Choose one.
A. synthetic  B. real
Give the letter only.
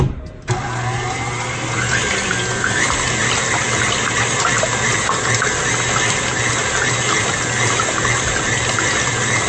B